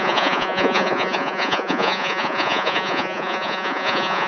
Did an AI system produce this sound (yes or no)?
yes